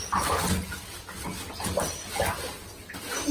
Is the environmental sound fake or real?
real